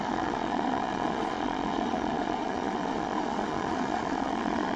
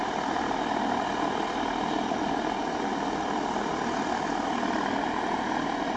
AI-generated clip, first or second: first